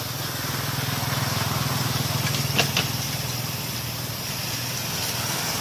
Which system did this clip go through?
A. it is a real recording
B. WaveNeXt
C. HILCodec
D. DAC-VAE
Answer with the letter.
A